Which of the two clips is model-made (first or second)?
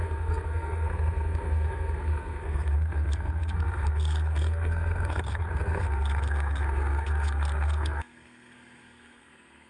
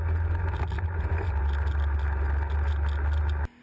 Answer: first